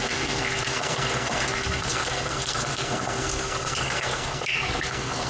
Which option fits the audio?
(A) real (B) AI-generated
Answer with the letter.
B